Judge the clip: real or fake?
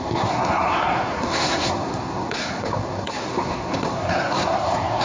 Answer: fake